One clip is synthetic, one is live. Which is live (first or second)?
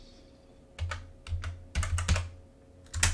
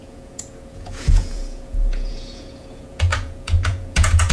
first